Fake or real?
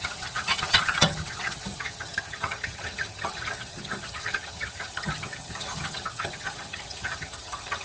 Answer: fake